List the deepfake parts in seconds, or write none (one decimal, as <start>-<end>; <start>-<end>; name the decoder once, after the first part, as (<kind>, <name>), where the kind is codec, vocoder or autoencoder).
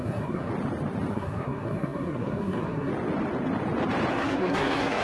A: 0.0-0.5 (codec, SNAC); 1.1-2.9; 4.1-5.0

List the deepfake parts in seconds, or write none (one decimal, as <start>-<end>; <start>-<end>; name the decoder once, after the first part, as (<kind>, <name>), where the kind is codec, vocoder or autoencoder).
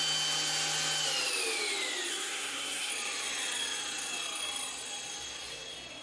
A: 2.1-2.9 (codec, SNAC)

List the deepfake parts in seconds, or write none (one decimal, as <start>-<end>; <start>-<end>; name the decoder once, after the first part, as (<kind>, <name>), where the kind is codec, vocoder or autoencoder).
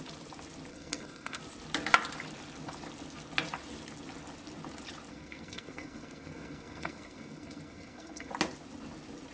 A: 0.7-1.4 (codec, SNAC); 5.1-8.3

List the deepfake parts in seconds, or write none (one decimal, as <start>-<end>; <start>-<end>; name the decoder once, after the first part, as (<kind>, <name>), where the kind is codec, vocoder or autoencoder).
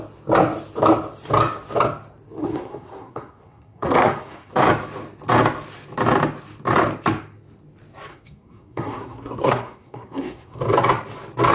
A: 2.4-4.5 (codec, SNAC); 8.1-10.6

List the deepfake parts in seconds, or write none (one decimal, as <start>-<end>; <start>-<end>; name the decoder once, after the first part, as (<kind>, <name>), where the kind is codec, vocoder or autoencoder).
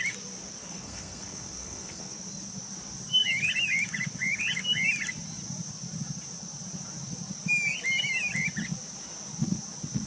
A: 0.6-2.2 (codec, SNAC)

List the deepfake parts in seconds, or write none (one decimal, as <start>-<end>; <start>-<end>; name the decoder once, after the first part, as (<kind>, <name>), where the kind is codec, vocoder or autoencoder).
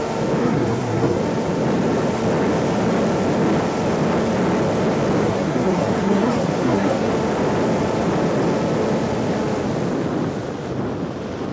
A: 0.4-1.2 (codec, SNAC); 5.2-7.1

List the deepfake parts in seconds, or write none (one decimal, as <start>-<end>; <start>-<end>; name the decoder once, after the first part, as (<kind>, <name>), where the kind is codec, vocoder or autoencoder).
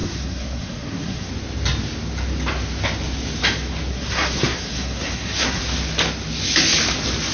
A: 0.0-1.3 (codec, SNAC); 3.9-5.6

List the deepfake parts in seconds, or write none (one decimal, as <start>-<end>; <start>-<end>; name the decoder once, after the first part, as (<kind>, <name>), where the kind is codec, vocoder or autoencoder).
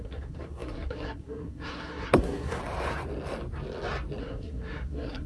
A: 0.0-2.6 (codec, SNAC); 4.2-5.3